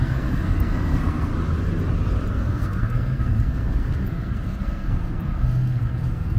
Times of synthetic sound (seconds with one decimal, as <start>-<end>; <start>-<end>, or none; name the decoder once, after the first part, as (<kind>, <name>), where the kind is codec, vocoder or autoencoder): 0.0-1.3 (codec, SNAC); 2.3-6.4